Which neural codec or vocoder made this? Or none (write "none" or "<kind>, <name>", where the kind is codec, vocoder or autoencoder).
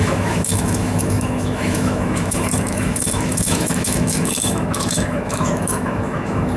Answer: autoencoder, DAC-VAE